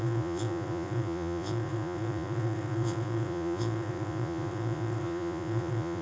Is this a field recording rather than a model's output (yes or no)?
no